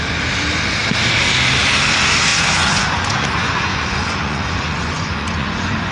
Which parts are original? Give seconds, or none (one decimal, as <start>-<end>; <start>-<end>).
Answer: 0.0-2.3